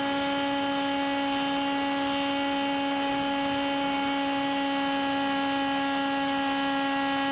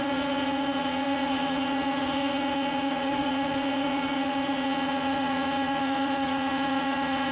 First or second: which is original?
first